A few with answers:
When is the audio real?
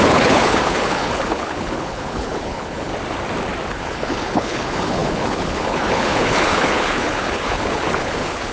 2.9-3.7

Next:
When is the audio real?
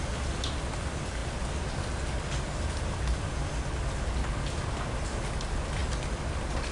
0.0-6.7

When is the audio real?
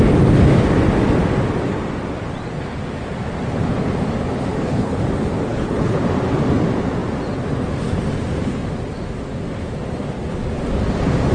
0.0-4.5; 5.0-5.5; 6.0-11.3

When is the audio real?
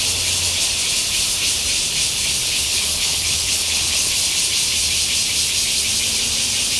0.0-2.4; 4.1-6.8